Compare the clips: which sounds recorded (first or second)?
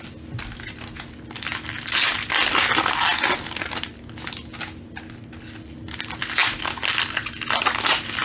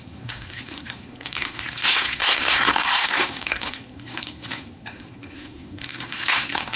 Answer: first